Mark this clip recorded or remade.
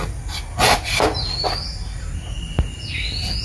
recorded